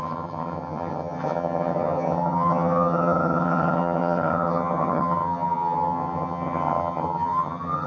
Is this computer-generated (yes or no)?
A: yes